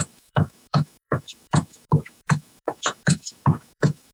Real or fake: fake